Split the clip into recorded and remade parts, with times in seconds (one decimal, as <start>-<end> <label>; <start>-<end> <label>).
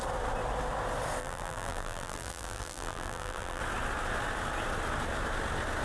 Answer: 0.0-1.2 recorded; 1.2-3.6 remade; 3.6-5.8 recorded